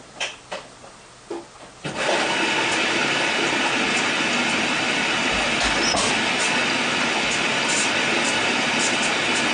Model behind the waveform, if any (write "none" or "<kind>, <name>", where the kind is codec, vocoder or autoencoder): none